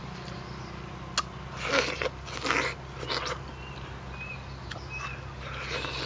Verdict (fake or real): real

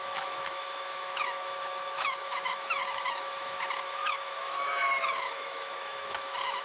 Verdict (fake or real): fake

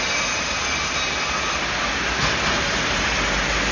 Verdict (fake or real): real